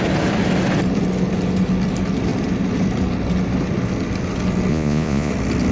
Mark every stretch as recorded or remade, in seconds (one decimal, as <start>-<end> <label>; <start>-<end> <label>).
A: 0.0-4.7 recorded; 4.7-5.3 remade; 5.3-5.7 recorded